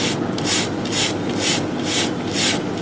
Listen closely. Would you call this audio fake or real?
real